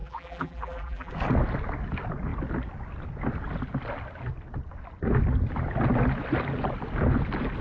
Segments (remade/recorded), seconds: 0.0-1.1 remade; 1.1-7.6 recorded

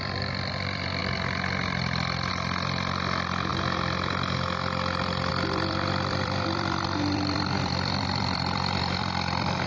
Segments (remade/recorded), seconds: 0.0-3.5 remade; 3.5-5.3 recorded; 5.3-9.7 remade

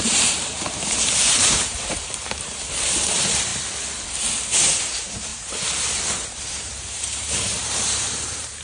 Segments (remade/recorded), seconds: 0.0-3.5 remade; 3.5-4.8 recorded; 4.8-8.6 remade

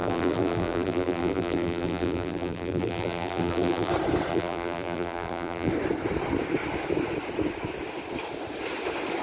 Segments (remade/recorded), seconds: 0.0-3.9 remade; 3.9-4.3 recorded; 4.3-5.7 remade; 5.7-9.2 recorded